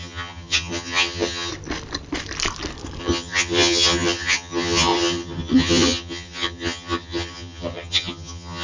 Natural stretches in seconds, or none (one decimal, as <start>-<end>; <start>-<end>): 1.5-3.0